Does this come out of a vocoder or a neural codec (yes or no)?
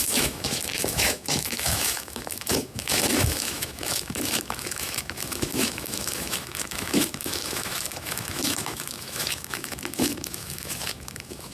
yes